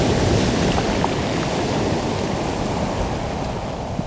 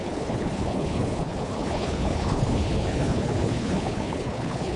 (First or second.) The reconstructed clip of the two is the second